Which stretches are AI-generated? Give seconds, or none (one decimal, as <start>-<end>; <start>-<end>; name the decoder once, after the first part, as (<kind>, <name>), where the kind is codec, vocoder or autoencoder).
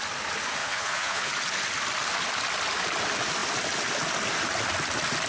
0.6-1.3 (vocoder, Vocos)